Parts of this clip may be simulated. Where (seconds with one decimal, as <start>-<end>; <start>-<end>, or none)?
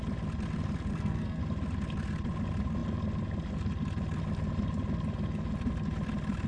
0.9-1.4